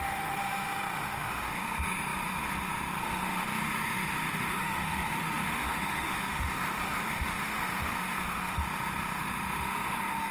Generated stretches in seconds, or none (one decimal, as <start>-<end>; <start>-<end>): 0.0-10.3